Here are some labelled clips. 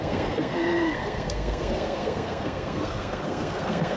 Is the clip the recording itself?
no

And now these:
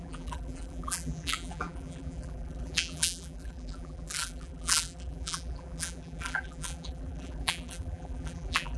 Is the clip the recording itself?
no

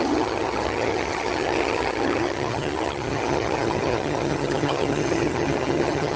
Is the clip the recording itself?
no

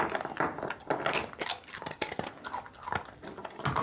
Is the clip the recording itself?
yes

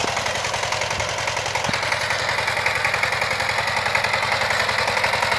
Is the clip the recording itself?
yes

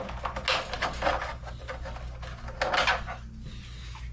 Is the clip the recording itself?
yes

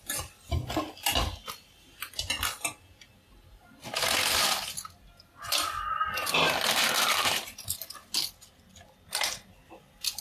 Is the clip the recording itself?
yes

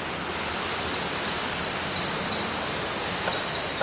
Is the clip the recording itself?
yes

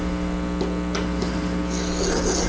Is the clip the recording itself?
yes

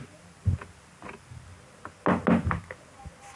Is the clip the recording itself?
yes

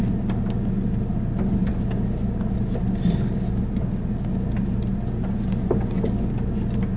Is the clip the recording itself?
yes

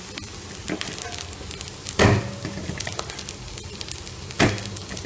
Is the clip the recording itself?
yes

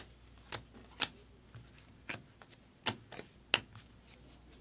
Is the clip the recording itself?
yes